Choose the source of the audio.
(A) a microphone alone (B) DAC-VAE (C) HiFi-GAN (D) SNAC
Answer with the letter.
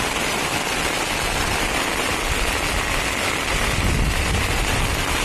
A